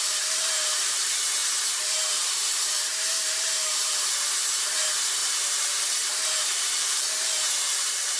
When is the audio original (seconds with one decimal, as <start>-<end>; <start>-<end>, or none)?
none